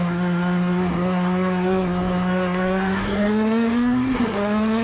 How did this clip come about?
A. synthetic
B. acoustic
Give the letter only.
A